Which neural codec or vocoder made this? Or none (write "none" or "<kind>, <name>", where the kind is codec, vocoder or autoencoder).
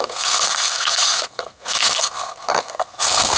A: codec, SNAC